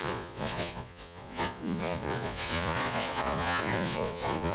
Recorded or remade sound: remade